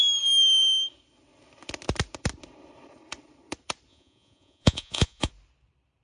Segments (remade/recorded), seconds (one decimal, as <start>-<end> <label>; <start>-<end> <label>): 0.0-3.9 recorded; 3.9-5.3 remade; 5.3-6.0 recorded